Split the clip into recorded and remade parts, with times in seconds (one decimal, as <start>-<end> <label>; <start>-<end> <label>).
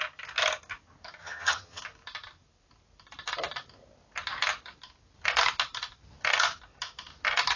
0.0-1.2 recorded; 1.2-1.8 remade; 1.8-7.6 recorded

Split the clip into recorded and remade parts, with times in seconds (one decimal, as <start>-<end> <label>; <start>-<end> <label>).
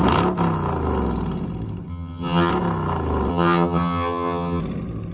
0.0-1.9 recorded; 1.9-2.5 remade; 2.5-3.3 recorded; 3.3-4.6 remade; 4.6-5.1 recorded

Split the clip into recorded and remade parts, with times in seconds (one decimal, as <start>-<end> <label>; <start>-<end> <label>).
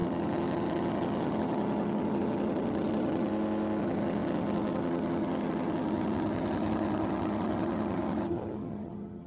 0.0-3.3 remade; 3.3-3.8 recorded; 3.8-9.3 remade